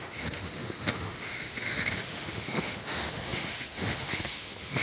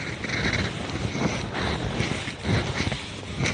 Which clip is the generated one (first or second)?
first